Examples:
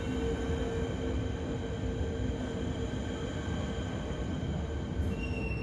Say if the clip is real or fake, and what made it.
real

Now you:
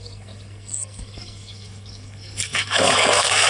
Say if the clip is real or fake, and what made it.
fake, codec, SNAC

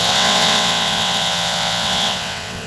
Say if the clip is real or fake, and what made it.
fake, vocoder, WaveNeXt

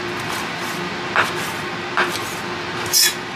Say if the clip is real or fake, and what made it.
real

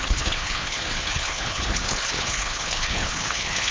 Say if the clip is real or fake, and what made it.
fake, codec, HILCodec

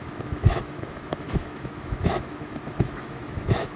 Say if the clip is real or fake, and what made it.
fake, autoencoder, DAC-VAE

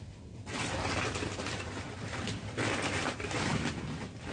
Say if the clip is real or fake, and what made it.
real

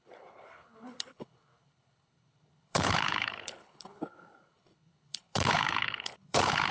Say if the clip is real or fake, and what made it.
fake, codec, HILCodec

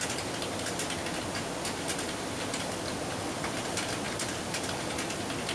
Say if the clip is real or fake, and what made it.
real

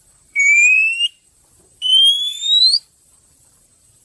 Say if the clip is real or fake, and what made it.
fake, vocoder, BigVGAN v2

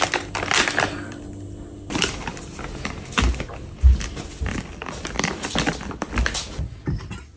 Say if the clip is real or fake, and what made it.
real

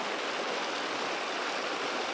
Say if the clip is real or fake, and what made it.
real